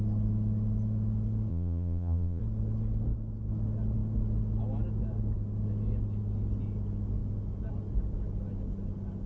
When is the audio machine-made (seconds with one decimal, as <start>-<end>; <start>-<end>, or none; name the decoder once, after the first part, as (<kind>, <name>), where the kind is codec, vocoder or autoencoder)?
1.5-2.4 (vocoder, Vocos)